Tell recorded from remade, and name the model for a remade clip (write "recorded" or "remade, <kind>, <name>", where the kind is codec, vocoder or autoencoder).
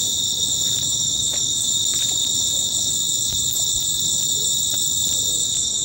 recorded